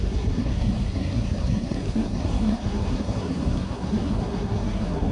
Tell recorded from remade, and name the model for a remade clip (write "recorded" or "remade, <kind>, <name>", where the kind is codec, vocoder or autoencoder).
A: remade, codec, SNAC